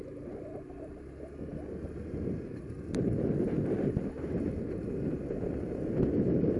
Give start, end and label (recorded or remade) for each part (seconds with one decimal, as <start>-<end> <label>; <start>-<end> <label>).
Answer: 0.0-6.6 recorded